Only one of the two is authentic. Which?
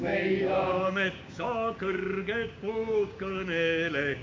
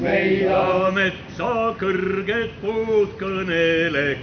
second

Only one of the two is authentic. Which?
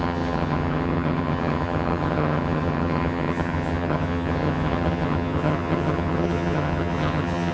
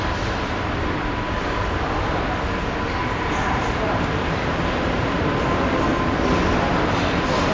second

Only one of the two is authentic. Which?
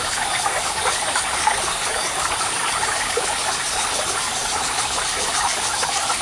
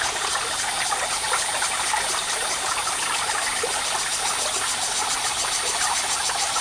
second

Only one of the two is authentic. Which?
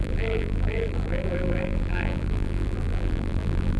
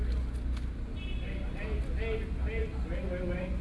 second